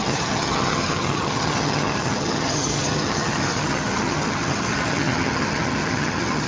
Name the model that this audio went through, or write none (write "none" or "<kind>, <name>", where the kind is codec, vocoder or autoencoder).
vocoder, HiFi-GAN